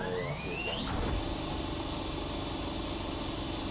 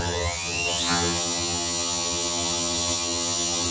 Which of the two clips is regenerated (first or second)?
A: second